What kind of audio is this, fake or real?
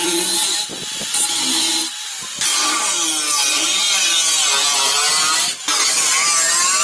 real